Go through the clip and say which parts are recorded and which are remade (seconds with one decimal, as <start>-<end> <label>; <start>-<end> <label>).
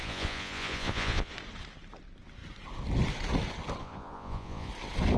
0.0-1.3 remade; 1.3-3.8 recorded; 3.8-4.7 remade; 4.7-5.2 recorded